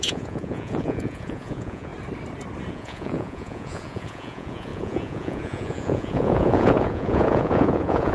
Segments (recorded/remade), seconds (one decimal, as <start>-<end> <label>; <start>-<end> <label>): 0.0-1.9 remade; 1.9-2.7 recorded; 2.7-8.1 remade